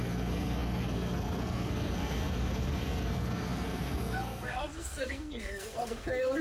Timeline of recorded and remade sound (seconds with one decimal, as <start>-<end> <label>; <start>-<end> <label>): 0.0-6.4 remade